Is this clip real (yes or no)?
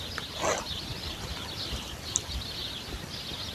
yes